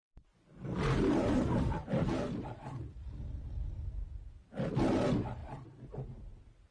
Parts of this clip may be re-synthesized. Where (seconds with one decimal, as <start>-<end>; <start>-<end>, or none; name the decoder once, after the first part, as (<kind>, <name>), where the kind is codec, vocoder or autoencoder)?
none